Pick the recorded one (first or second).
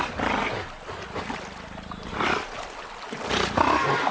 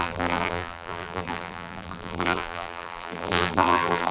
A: first